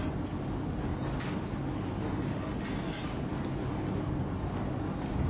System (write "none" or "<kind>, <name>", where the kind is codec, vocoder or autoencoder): none